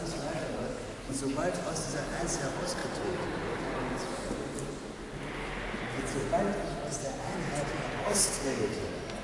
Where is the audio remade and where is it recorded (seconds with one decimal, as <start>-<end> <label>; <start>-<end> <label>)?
0.0-8.0 recorded; 8.0-8.7 remade; 8.7-9.2 recorded